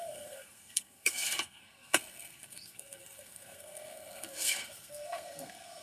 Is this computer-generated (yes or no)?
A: yes